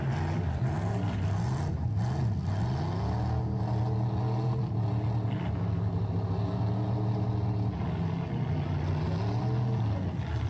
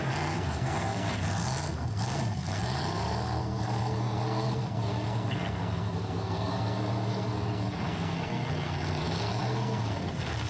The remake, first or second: second